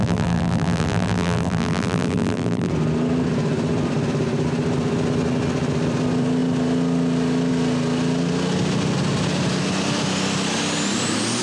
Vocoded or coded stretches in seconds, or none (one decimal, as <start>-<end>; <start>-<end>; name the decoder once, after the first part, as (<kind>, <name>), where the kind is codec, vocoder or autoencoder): 0.0-2.7 (vocoder, BigVGAN v2)